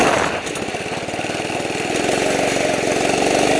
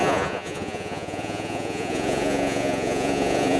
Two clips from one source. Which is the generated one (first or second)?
second